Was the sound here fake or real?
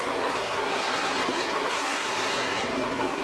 fake